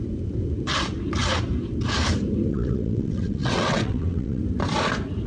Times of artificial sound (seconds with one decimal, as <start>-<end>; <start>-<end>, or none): 2.5-4.4